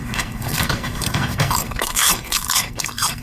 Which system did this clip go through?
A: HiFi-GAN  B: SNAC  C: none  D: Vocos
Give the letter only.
B